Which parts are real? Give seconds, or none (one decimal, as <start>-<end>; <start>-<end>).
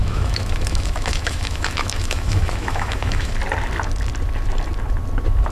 3.3-5.5